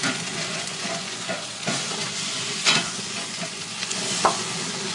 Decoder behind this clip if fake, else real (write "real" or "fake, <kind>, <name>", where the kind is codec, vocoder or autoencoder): fake, vocoder, Vocos